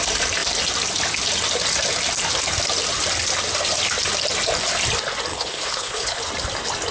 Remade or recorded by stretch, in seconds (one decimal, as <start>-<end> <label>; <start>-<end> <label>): 0.0-5.3 recorded; 5.3-6.3 remade; 6.3-6.9 recorded

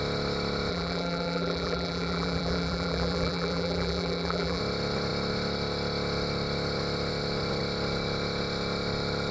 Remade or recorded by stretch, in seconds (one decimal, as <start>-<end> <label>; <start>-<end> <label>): 0.0-0.7 recorded; 0.7-4.6 remade; 4.6-9.3 recorded